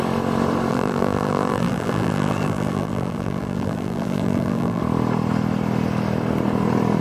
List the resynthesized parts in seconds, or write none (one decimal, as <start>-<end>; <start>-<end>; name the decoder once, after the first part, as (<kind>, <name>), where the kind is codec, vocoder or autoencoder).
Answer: 0.7-4.8 (vocoder, BigVGAN v2)